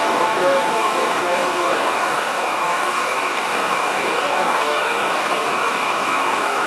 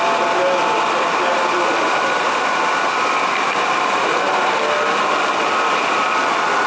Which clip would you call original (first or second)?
second